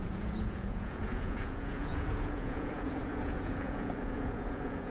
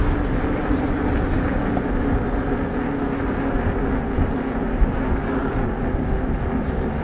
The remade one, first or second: first